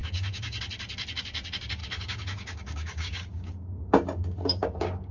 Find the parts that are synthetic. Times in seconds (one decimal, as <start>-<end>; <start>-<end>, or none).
0.0-0.6; 1.8-5.1